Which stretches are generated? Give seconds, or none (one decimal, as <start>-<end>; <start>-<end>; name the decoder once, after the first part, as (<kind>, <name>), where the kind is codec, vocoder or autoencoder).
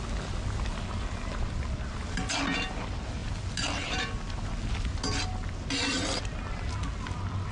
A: none